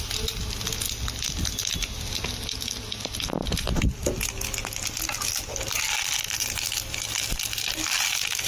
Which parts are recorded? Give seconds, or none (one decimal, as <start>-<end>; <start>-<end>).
0.0-8.5